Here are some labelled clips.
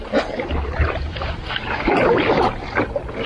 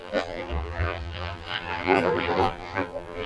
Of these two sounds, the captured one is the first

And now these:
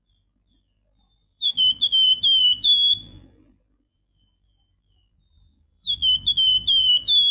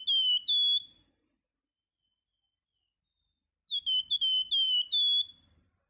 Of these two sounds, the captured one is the second